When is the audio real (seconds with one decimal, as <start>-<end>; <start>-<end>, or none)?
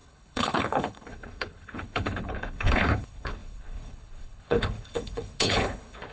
none